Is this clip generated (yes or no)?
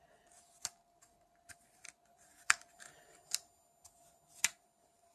no